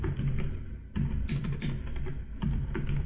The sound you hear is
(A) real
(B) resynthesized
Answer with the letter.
A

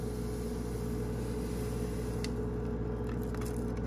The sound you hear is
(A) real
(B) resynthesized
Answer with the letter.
A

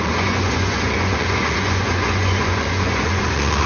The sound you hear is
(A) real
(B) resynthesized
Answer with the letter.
B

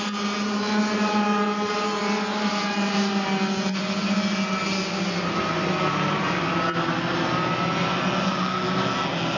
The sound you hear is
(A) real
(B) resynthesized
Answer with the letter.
A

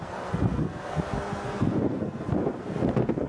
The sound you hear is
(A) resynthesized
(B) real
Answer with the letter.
A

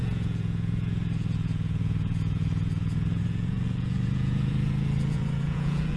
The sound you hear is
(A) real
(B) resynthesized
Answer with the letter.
B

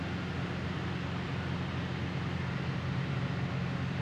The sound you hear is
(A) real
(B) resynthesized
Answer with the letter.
A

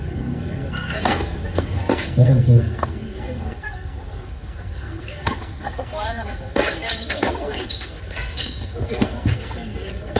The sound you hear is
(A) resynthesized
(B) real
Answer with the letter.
A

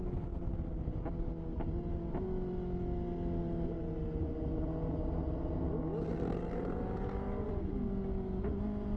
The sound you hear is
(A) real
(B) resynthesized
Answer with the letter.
A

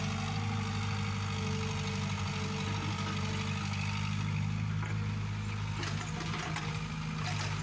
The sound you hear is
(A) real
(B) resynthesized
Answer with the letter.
A